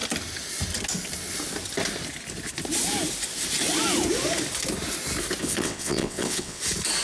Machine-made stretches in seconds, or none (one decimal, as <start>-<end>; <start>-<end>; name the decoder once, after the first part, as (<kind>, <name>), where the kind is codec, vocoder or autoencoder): 5.4-6.6 (vocoder, WaveNeXt)